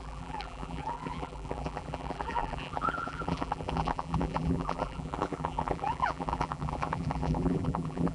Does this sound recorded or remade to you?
remade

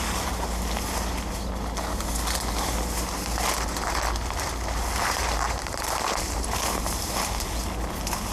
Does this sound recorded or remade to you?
recorded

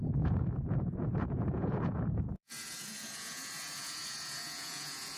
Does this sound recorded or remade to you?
remade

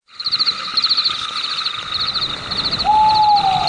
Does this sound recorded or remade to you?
recorded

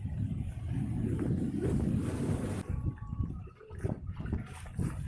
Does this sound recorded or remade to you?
recorded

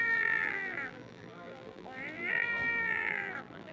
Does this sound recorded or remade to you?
remade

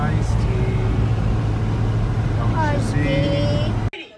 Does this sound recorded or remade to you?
recorded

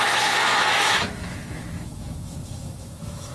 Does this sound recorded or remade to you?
remade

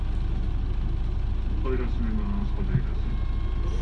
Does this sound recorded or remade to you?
recorded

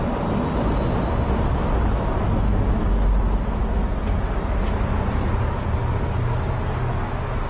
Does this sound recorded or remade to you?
recorded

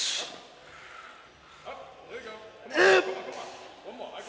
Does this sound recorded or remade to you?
recorded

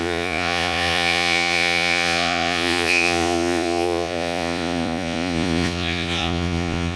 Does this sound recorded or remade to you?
remade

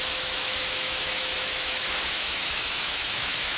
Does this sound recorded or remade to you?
remade